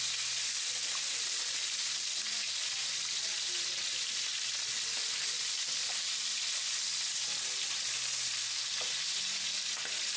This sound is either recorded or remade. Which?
recorded